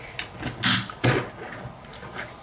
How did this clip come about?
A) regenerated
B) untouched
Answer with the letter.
B